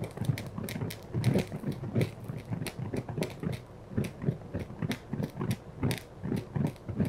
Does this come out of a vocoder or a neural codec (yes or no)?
no